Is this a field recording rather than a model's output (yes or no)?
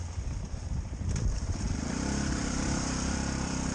no